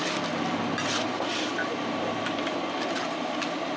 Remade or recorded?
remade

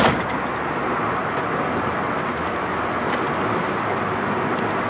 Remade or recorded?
recorded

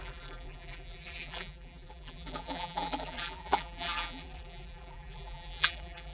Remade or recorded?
remade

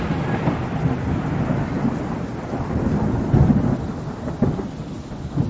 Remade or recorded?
recorded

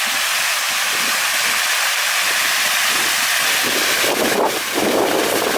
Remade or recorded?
recorded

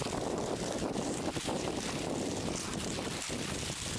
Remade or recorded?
recorded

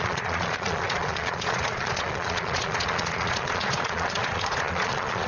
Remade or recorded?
remade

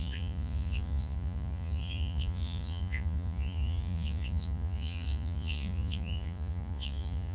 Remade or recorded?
remade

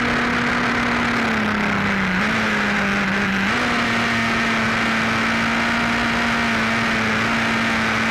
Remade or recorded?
recorded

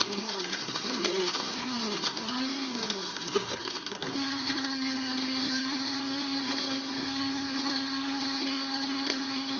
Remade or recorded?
remade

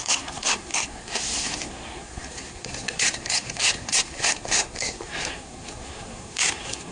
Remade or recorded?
remade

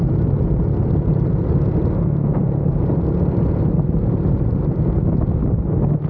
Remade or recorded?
recorded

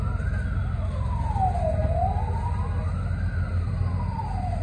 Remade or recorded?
recorded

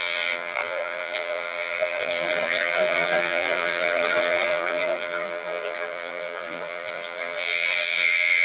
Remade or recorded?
remade